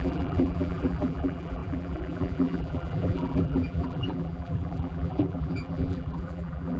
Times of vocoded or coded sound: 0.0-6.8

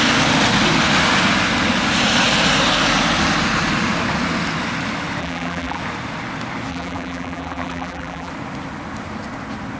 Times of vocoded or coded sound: 5.2-5.8; 6.7-8.3

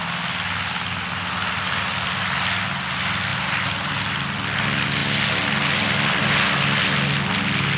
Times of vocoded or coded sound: 3.3-3.9